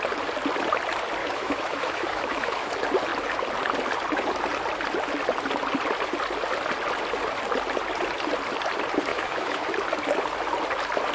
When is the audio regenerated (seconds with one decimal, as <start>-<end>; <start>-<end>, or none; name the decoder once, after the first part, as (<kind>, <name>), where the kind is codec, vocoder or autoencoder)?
1.2-2.7 (autoencoder, DAC-VAE); 9.1-9.6